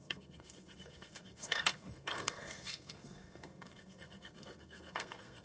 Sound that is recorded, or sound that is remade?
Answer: remade